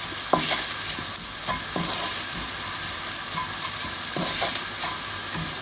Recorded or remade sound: recorded